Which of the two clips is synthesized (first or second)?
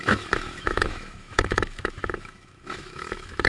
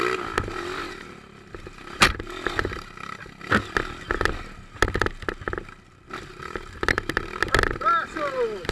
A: first